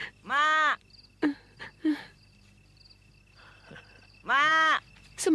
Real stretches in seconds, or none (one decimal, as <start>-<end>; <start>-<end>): 0.0-5.3